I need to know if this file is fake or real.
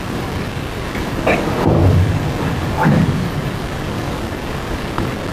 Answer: fake